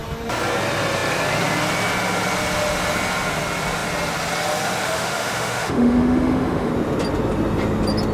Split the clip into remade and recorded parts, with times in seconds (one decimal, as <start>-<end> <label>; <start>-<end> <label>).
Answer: 0.0-4.8 recorded; 4.8-6.7 remade; 6.7-8.1 recorded

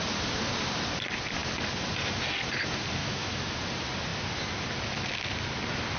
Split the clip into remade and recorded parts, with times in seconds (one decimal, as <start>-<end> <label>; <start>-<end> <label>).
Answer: 0.0-3.0 recorded; 3.0-3.6 remade; 3.6-6.0 recorded

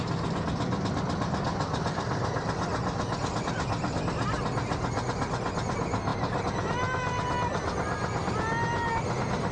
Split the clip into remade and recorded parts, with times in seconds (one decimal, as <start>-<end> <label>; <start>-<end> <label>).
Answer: 0.0-9.5 recorded

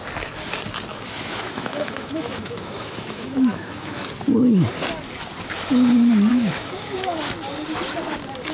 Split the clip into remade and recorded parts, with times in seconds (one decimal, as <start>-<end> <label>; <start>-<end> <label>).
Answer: 0.0-0.9 recorded; 0.9-4.0 remade; 4.0-6.3 recorded; 6.3-7.2 remade; 7.2-8.5 recorded